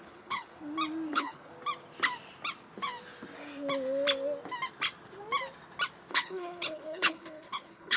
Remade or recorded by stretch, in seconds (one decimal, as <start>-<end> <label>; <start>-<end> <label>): 0.0-0.5 remade; 0.5-1.1 recorded; 1.1-1.5 remade; 1.5-6.1 recorded; 6.1-8.0 remade